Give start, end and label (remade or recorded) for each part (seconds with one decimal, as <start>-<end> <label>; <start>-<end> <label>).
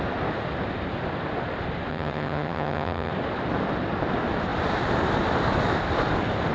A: 0.0-1.9 recorded; 1.9-3.1 remade; 3.1-6.5 recorded